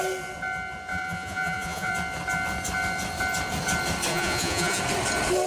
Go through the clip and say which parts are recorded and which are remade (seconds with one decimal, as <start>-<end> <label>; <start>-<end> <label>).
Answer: 0.0-0.9 recorded; 0.9-1.9 remade; 1.9-4.1 recorded; 4.1-4.8 remade; 4.8-5.5 recorded